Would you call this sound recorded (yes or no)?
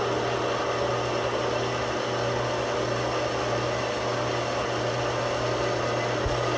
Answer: yes